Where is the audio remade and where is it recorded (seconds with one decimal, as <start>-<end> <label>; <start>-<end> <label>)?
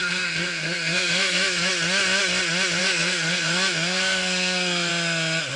0.0-1.7 remade; 1.7-2.8 recorded; 2.8-4.9 remade; 4.9-5.6 recorded